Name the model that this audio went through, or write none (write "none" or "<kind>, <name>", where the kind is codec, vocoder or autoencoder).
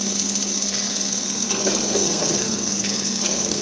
codec, SNAC